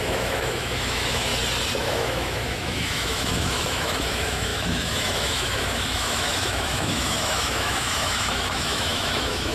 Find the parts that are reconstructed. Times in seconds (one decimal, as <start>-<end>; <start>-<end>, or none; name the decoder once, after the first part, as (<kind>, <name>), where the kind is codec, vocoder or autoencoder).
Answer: 0.0-1.3 (autoencoder, DAC-VAE); 1.8-9.5